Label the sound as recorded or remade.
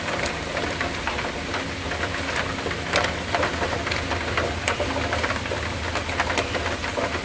recorded